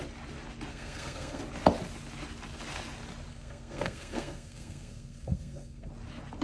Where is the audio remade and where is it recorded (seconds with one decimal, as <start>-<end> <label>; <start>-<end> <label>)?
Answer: 0.0-0.7 recorded; 0.7-1.4 remade; 1.4-3.3 recorded; 3.3-5.9 remade; 5.9-6.4 recorded